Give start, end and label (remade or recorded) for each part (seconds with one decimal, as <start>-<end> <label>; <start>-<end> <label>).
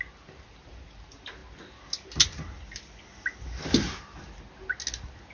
0.0-5.3 recorded